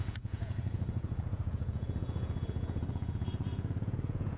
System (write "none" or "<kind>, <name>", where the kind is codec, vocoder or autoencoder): vocoder, Vocos